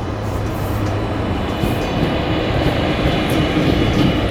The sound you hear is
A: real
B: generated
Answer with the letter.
B